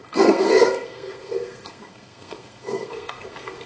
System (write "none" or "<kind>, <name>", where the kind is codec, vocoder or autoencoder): codec, SNAC